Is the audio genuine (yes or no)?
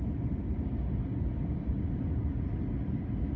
yes